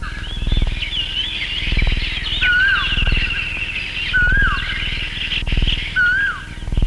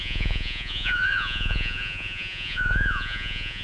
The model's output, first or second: second